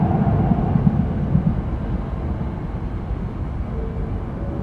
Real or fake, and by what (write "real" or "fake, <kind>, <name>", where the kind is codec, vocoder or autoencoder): real